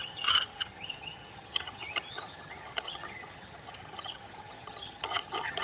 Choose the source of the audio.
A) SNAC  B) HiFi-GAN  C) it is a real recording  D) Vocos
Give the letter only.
B